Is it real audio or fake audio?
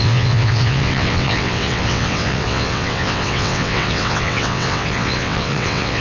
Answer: fake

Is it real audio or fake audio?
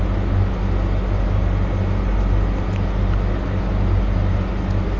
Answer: real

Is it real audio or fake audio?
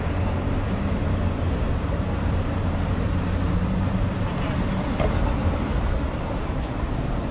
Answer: fake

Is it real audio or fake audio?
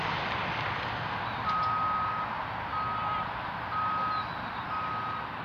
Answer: real